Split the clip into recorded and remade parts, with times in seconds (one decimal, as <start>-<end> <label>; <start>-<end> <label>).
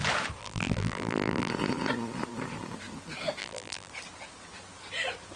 0.0-0.4 recorded; 0.4-1.5 remade; 1.5-3.4 recorded; 3.4-3.9 remade; 3.9-5.4 recorded